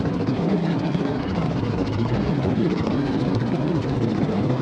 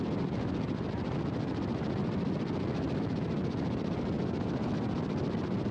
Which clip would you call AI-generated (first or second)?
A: first